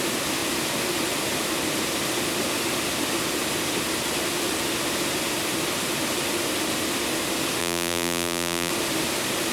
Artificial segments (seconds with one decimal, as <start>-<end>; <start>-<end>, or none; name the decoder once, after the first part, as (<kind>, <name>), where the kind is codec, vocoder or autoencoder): 7.6-8.7 (vocoder, BigVGAN v2)